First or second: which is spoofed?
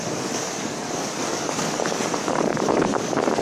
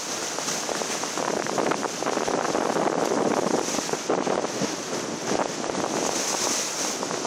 first